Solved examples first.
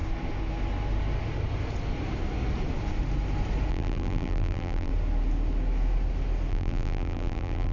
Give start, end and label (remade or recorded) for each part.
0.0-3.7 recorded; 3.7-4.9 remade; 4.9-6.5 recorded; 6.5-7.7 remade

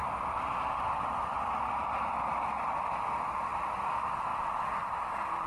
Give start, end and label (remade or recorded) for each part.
0.0-0.7 remade; 0.7-1.3 recorded; 1.3-2.4 remade; 2.4-4.3 recorded; 4.3-4.9 remade; 4.9-5.5 recorded

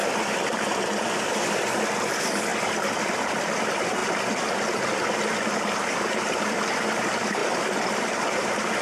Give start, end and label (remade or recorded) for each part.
0.0-0.9 recorded; 0.9-2.5 remade; 2.5-3.0 recorded; 3.0-7.4 remade; 7.4-8.2 recorded; 8.2-8.8 remade

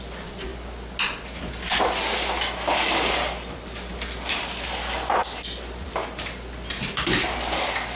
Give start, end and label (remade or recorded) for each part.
0.0-0.5 remade; 0.5-3.5 recorded; 3.5-8.0 remade

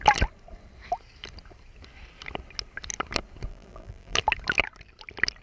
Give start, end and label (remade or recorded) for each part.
0.0-3.5 recorded; 3.5-4.2 remade; 4.2-5.4 recorded

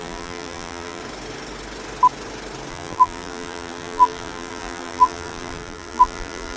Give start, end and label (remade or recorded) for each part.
0.0-1.0 remade; 1.0-2.7 recorded; 2.7-6.6 remade